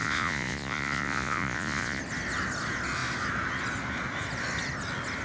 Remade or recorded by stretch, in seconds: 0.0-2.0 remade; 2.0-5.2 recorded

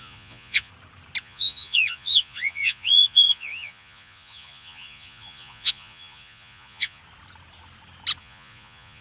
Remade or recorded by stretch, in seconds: 0.0-0.7 remade; 0.7-1.2 recorded; 1.2-7.0 remade; 7.0-8.2 recorded; 8.2-9.0 remade

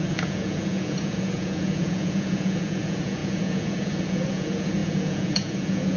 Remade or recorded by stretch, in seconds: 0.0-6.0 remade

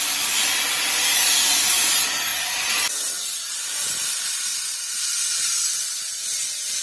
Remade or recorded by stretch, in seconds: 0.0-6.8 recorded

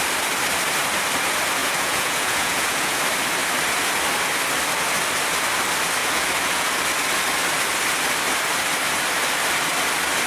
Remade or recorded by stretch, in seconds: 0.0-1.6 recorded; 1.6-3.0 remade; 3.0-6.0 recorded; 6.0-6.8 remade; 6.8-10.3 recorded

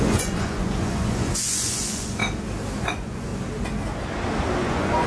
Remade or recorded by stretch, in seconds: 0.0-2.2 remade; 2.2-2.8 recorded; 2.8-3.3 remade; 3.3-4.6 recorded; 4.6-5.1 remade

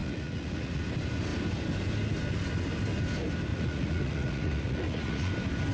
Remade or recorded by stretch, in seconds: 0.0-0.8 remade; 0.8-3.5 recorded; 3.5-5.3 remade; 5.3-5.7 recorded

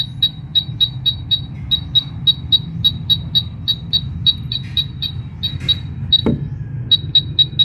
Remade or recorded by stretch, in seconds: 0.0-7.6 recorded